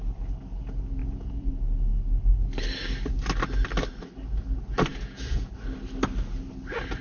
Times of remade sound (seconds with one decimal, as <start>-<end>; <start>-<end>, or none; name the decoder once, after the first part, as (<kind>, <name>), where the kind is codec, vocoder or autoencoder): 1.0-1.5 (vocoder, Vocos); 4.9-5.5